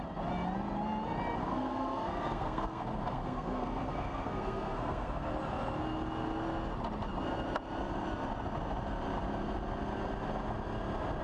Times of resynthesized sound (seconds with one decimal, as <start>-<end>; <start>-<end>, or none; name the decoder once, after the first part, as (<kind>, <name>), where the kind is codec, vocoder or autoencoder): 1.4-5.3 (codec, SNAC)